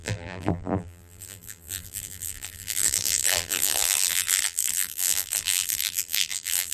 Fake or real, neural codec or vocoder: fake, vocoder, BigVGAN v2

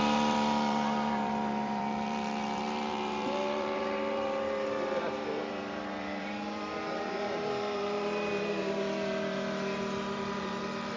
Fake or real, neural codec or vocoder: fake, vocoder, BigVGAN v2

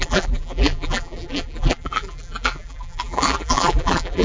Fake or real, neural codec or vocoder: fake, vocoder, BigVGAN v2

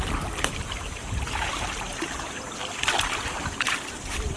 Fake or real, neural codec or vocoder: fake, vocoder, BigVGAN v2